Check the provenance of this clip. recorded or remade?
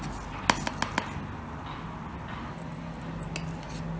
recorded